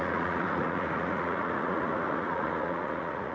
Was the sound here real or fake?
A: fake